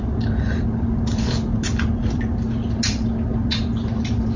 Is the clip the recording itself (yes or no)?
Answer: yes